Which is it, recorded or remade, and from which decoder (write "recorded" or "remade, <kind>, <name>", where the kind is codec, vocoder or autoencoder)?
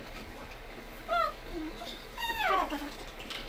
remade, codec, DAC